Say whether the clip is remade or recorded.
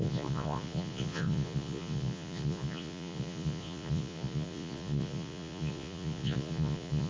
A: remade